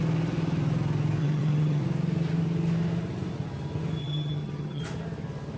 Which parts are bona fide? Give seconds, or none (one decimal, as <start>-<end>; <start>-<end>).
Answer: 0.0-1.2; 1.8-4.0; 4.8-5.6